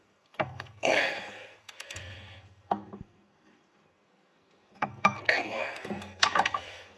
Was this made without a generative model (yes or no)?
no